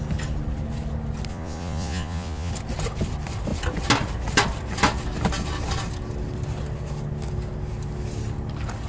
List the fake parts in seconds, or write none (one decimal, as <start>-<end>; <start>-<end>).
1.3-2.5